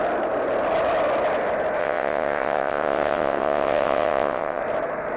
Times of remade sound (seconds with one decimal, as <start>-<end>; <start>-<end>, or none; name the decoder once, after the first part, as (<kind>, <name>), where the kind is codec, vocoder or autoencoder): 1.8-4.6 (vocoder, WaveNeXt)